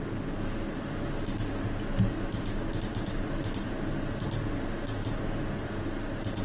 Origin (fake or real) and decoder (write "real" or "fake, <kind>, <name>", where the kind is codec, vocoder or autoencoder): real